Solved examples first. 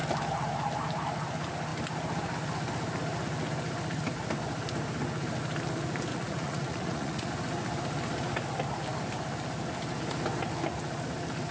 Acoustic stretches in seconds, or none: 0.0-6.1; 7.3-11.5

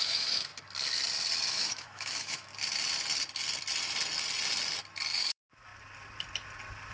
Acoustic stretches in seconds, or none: 0.5-1.5; 2.5-5.2; 5.7-6.9

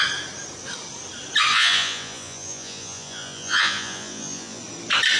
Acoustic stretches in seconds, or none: 0.0-1.5; 4.6-5.2